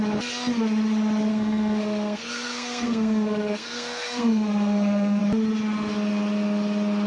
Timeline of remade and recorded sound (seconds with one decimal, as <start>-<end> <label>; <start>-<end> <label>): 0.0-1.3 recorded; 1.3-5.2 remade; 5.2-7.1 recorded

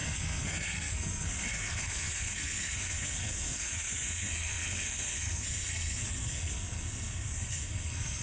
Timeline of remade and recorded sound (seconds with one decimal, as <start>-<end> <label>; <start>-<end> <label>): 0.0-8.2 remade